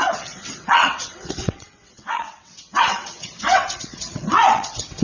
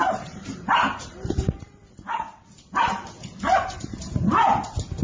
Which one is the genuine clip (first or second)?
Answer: second